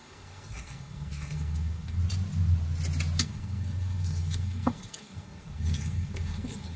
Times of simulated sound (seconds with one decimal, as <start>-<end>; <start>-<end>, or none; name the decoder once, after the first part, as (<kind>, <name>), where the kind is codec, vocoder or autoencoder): 0.0-2.0 (codec, SNAC); 3.2-6.8